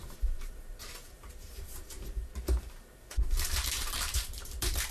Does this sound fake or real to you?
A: fake